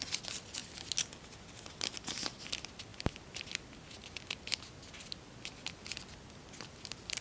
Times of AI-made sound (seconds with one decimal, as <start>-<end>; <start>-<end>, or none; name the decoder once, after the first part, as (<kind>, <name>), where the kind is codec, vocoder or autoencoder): none